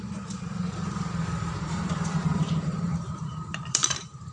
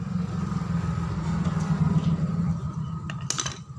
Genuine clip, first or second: second